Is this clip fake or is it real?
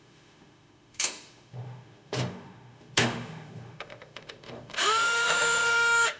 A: fake